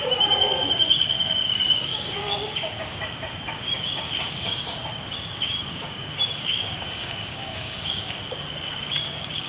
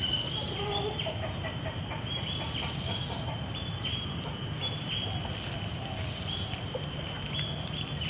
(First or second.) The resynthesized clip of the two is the first